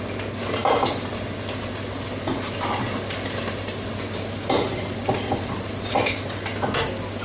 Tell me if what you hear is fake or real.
real